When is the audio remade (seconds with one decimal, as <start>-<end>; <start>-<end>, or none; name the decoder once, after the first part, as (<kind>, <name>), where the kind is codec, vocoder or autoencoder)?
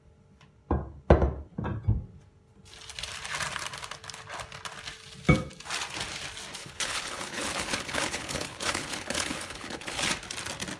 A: 6.6-10.1 (codec, HILCodec)